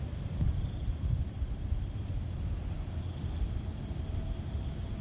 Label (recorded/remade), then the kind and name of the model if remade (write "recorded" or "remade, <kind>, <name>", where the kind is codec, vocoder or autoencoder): recorded